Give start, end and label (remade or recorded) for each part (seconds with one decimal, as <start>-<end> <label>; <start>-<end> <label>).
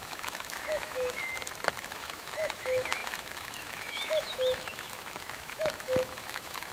0.0-1.3 remade; 1.3-1.8 recorded; 1.8-6.7 remade